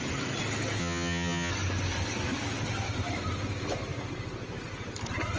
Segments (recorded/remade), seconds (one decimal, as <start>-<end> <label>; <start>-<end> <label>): 0.0-0.8 recorded; 0.8-1.5 remade; 1.5-5.4 recorded